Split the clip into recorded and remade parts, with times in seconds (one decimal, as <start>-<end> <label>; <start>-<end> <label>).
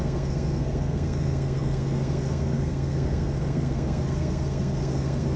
0.0-5.4 remade